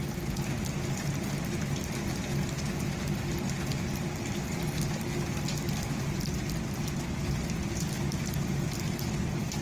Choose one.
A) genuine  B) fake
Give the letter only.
A